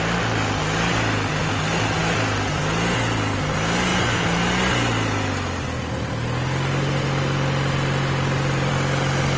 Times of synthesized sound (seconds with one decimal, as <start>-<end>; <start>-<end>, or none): none